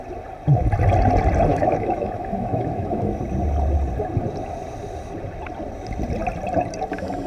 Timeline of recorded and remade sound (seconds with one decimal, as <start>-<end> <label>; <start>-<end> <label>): 0.0-1.5 recorded; 1.5-3.2 remade; 3.2-7.3 recorded